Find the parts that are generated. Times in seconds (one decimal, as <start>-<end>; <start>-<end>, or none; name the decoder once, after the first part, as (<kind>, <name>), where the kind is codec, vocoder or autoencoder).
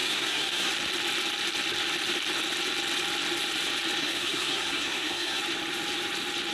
0.0-0.7 (codec, SNAC); 4.0-5.4